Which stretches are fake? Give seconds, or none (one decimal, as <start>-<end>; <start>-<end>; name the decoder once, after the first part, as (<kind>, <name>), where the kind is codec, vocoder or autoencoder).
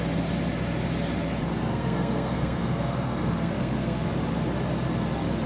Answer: 1.7-4.1 (codec, SNAC)